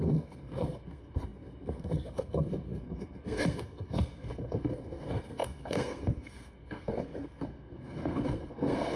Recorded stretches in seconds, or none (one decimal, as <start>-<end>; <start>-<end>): none